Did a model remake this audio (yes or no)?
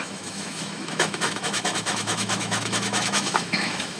yes